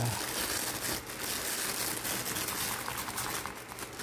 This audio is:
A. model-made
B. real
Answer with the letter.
B